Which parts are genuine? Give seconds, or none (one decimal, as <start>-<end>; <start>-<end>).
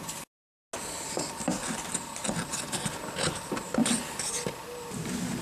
0.0-5.4